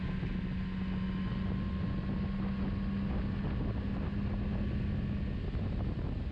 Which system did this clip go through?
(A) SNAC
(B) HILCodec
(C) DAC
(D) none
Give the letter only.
D